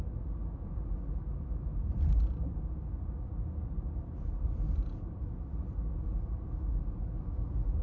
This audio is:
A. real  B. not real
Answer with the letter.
A